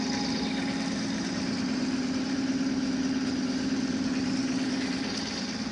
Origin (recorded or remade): recorded